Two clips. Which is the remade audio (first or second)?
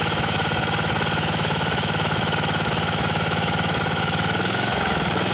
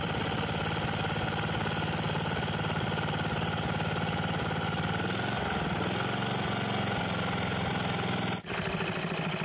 first